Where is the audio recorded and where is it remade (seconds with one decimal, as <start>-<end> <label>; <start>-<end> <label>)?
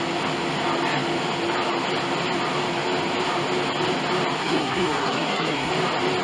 0.0-4.4 recorded; 4.4-5.7 remade; 5.7-6.2 recorded